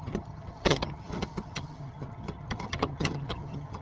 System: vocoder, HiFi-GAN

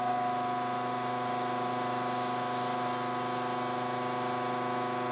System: none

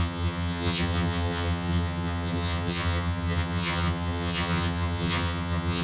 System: vocoder, HiFi-GAN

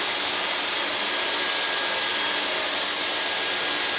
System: none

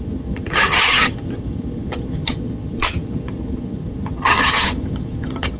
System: vocoder, HiFi-GAN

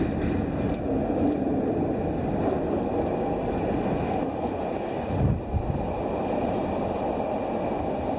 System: none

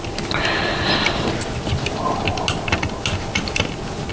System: none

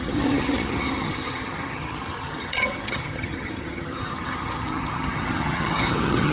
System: vocoder, HiFi-GAN